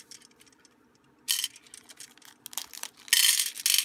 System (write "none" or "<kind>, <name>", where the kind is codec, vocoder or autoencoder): none